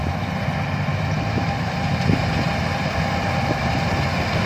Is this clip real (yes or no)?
yes